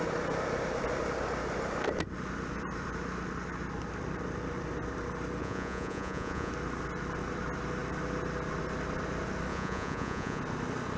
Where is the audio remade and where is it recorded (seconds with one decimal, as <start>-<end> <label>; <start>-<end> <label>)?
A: 0.0-5.4 recorded; 5.4-6.5 remade; 6.5-9.5 recorded; 9.5-10.4 remade; 10.4-11.0 recorded